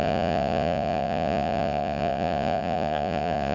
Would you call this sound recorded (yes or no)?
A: no